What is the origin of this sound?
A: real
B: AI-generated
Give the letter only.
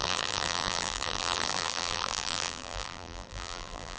B